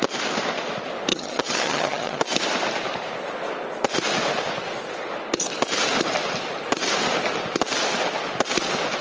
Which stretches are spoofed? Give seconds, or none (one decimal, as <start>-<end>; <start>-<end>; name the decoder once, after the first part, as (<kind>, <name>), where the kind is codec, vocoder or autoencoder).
1.1-2.2 (vocoder, HiFi-GAN)